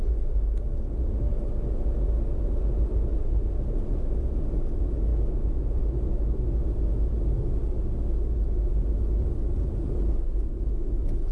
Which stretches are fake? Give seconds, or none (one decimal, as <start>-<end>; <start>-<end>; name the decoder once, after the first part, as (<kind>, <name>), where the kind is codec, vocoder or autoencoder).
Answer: 2.9-4.0 (vocoder, BigVGAN v2)

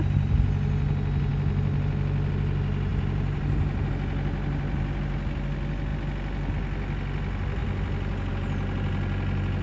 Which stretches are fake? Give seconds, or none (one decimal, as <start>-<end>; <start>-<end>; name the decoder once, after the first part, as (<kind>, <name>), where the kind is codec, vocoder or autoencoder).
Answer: 2.9-3.9 (vocoder, BigVGAN v2)

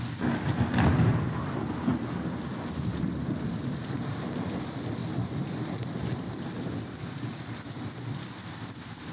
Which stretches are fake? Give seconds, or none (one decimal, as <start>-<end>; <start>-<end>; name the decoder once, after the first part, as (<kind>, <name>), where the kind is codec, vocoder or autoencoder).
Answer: 0.0-9.1 (vocoder, BigVGAN v2)

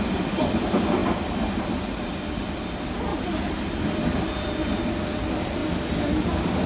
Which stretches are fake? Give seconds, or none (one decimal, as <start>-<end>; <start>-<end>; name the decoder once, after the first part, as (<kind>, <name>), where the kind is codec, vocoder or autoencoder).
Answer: 0.0-1.0 (vocoder, BigVGAN v2); 1.6-3.1; 3.8-5.6